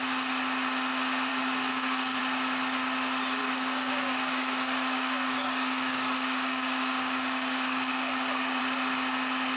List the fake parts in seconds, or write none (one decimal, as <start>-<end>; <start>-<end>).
1.3-2.2; 3.4-8.6